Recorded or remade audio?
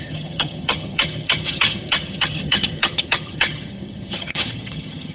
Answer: remade